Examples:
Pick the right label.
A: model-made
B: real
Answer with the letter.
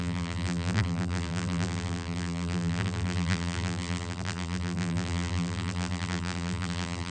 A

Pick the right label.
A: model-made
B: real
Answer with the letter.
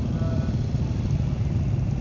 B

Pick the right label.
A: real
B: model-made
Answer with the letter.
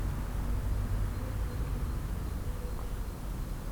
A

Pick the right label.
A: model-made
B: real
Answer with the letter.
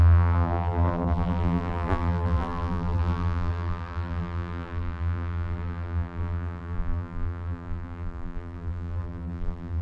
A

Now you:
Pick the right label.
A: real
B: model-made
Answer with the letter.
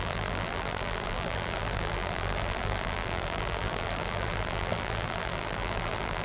B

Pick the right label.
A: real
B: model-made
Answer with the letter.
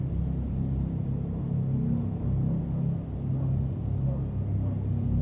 A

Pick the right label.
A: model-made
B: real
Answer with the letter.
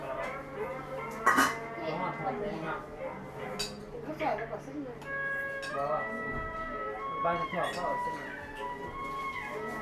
B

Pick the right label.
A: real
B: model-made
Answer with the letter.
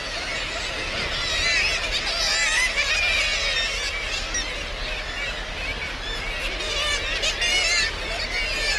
A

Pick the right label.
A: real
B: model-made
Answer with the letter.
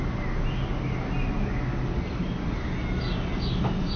A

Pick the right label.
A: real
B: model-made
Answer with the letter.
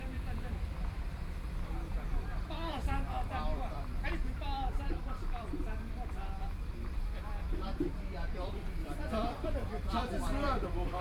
B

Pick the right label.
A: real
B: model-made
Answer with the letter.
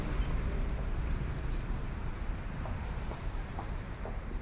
B